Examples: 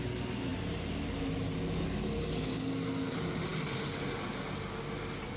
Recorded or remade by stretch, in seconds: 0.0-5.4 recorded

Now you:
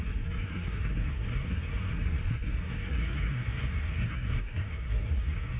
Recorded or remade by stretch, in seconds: 0.0-5.6 remade